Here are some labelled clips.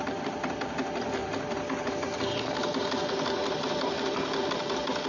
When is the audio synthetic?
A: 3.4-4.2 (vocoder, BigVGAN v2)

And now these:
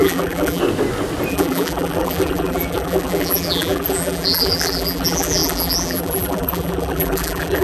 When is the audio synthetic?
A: 0.0-0.6 (vocoder, BigVGAN v2); 1.3-7.6

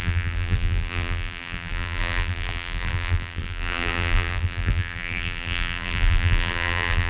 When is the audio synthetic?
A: 0.0-7.1 (vocoder, BigVGAN v2)